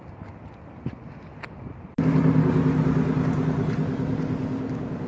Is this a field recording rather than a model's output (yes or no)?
yes